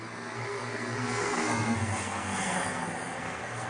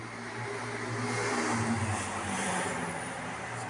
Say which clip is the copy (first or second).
first